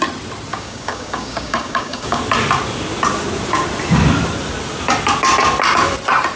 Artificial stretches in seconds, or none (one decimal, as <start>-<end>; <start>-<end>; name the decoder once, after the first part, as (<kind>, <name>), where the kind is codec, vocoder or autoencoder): 0.5-2.2 (codec, DAC)